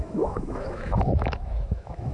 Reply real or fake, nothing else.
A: fake